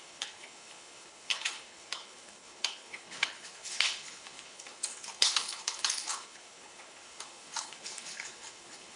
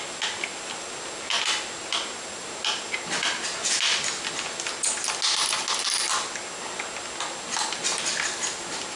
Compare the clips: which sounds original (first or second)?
second